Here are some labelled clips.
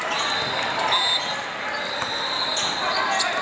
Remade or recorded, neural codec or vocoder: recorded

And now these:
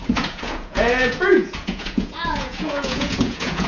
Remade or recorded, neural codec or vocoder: remade, vocoder, Vocos